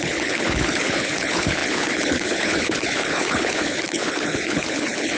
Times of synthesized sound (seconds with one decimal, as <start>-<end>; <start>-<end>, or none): 0.0-5.2